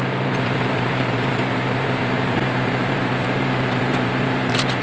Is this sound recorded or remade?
remade